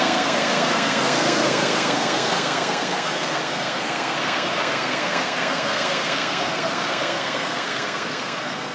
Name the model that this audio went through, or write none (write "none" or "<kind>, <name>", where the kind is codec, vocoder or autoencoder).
codec, SNAC